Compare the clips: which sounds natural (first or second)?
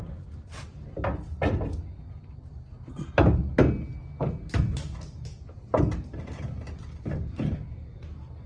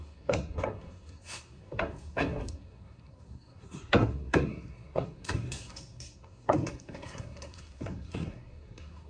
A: first